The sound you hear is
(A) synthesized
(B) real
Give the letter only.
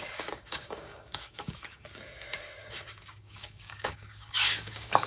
A